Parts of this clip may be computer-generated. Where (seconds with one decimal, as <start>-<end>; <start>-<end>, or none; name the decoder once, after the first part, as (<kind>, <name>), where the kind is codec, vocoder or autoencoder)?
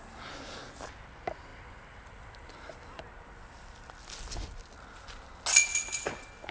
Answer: 1.5-3.0 (vocoder, BigVGAN v2); 5.7-6.5